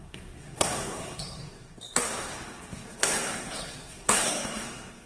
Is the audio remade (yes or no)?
yes